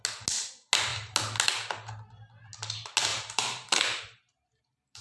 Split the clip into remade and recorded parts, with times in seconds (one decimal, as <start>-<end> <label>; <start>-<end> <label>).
0.0-3.1 recorded; 3.1-5.0 remade